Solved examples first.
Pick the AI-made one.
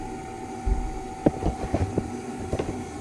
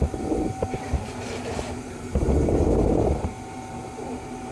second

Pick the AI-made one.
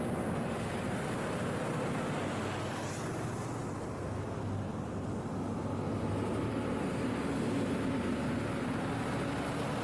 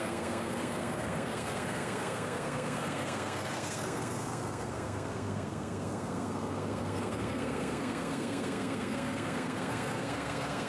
second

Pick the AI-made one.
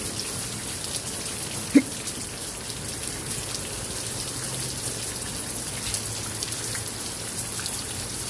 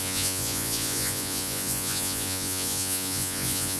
second